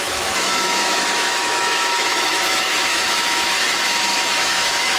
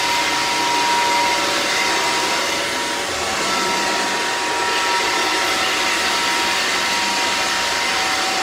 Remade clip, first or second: first